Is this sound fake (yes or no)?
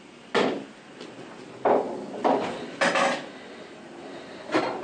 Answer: no